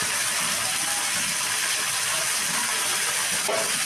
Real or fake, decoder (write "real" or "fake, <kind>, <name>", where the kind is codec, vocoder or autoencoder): real